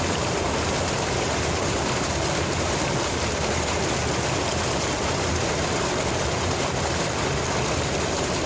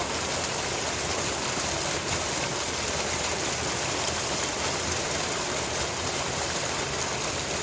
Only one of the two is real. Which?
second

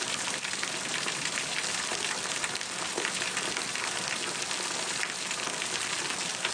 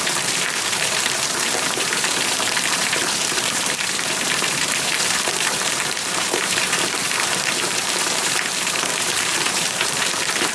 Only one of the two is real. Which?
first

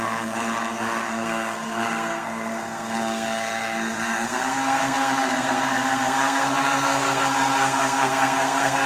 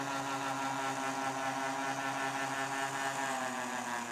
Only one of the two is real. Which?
second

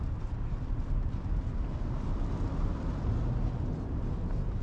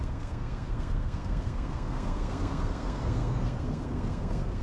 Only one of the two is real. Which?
first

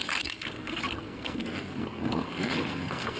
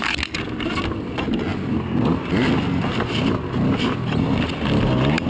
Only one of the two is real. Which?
second